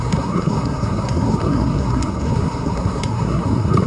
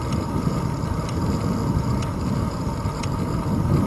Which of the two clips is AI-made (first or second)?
first